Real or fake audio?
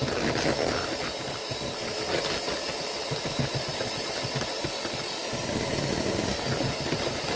real